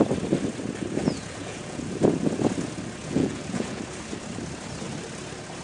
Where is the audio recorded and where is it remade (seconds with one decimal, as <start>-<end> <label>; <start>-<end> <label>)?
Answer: 0.0-1.0 recorded; 1.0-1.9 remade; 1.9-3.0 recorded; 3.0-3.8 remade; 3.8-5.6 recorded